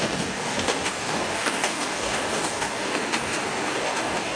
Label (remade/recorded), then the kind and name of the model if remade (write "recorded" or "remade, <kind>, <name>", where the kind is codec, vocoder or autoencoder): remade, codec, DAC